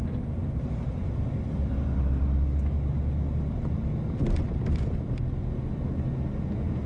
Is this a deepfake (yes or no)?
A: no